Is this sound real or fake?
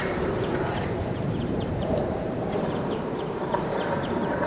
fake